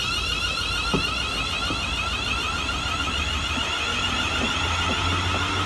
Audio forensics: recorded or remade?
recorded